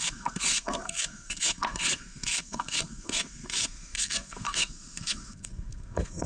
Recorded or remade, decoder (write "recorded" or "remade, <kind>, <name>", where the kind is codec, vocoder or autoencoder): remade, codec, SNAC